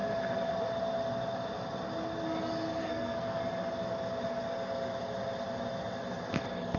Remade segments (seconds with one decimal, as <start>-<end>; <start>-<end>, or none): 2.8-3.4

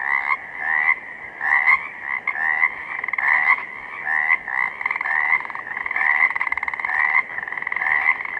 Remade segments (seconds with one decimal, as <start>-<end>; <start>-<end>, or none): none

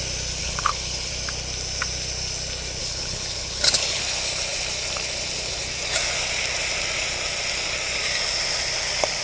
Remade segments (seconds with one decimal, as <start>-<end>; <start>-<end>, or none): 0.4-1.1; 2.8-4.0

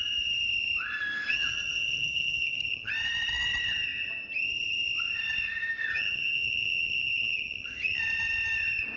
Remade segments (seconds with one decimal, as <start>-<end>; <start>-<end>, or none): 1.3-2.9; 5.9-8.0